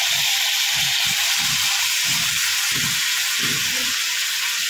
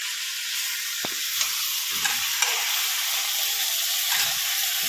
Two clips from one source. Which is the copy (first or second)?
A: first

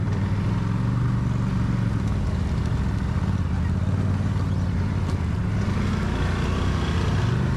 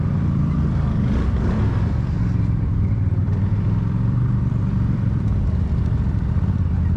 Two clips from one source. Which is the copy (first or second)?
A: second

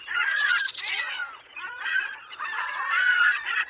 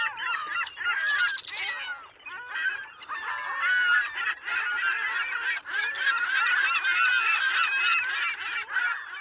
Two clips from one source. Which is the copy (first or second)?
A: first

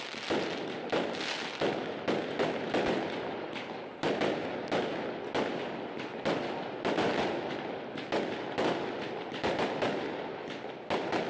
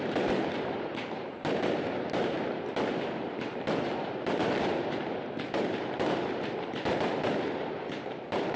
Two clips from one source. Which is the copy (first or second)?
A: second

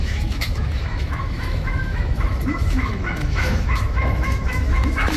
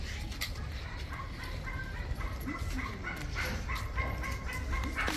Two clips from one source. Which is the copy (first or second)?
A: first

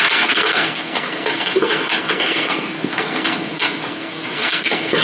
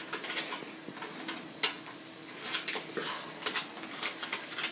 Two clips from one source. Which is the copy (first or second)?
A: first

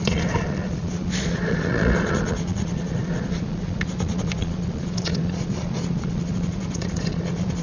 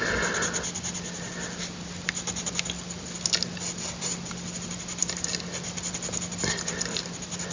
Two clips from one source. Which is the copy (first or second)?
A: first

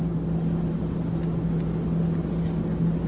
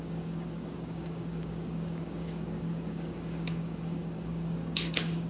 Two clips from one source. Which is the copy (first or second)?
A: second